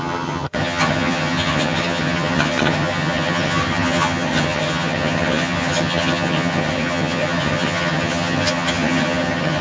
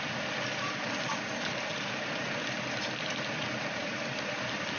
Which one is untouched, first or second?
second